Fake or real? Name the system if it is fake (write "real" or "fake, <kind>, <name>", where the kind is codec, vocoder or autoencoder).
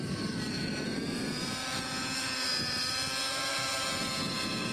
real